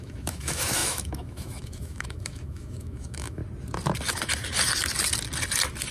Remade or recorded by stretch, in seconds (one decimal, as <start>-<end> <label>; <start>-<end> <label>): 0.0-3.4 remade; 3.4-5.9 recorded